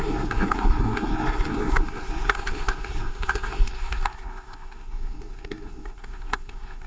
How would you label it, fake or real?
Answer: fake